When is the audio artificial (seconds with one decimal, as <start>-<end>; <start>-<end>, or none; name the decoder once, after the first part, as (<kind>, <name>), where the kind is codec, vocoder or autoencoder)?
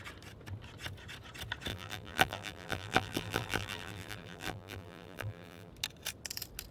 1.7-5.7 (vocoder, BigVGAN v2)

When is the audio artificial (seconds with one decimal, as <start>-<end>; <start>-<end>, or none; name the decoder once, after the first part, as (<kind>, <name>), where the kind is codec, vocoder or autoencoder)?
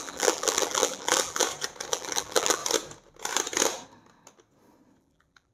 0.0-1.4 (vocoder, BigVGAN v2); 1.9-2.6; 5.0-5.5